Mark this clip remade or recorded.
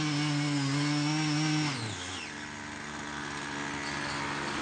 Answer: recorded